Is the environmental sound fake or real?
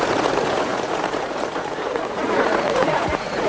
fake